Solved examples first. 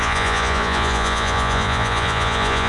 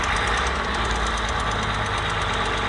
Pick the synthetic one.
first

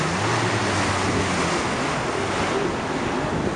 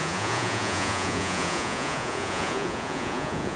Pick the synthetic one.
second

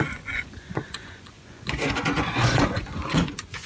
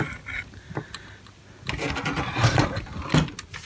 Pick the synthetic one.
first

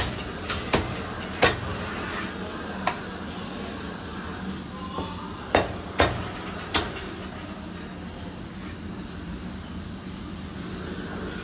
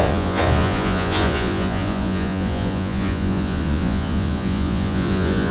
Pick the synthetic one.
second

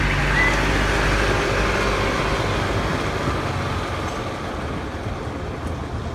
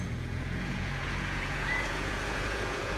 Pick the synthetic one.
second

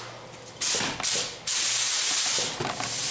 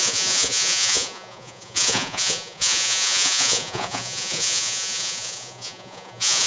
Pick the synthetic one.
second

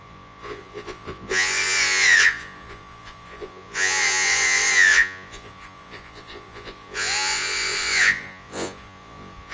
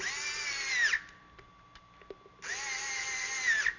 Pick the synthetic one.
first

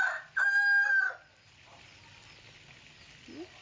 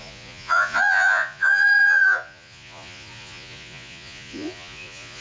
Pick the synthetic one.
second